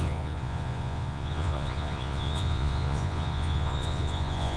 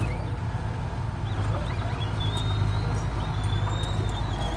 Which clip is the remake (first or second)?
first